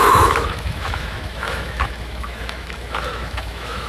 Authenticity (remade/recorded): remade